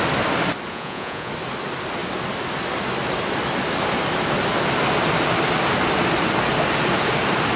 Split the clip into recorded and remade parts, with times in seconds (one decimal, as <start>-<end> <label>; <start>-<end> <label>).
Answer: 0.0-0.7 recorded; 0.7-1.3 remade; 1.3-7.6 recorded